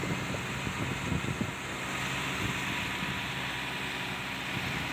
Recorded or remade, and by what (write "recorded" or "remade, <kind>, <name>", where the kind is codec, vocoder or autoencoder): recorded